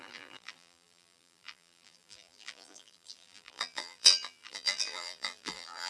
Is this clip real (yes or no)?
no